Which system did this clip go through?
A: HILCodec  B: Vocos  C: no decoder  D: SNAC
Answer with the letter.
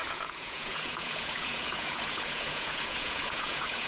B